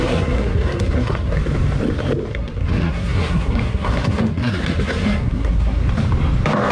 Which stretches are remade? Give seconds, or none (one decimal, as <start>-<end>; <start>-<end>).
0.0-1.4; 2.3-5.8